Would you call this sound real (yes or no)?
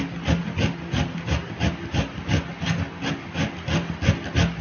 yes